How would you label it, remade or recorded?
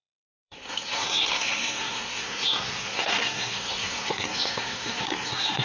remade